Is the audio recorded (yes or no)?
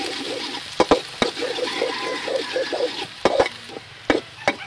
yes